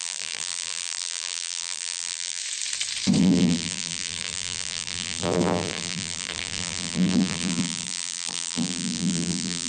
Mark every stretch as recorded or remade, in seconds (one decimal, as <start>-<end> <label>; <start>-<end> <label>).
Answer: 0.0-2.4 remade; 2.4-3.2 recorded; 3.2-9.7 remade